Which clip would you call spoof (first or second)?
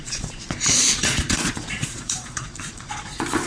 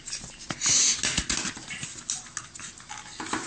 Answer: first